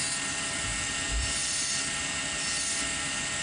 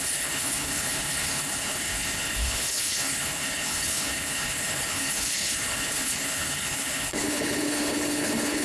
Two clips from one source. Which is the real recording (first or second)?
first